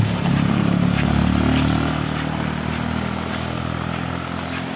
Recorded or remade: recorded